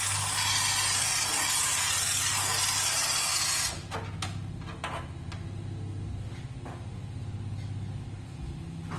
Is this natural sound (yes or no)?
yes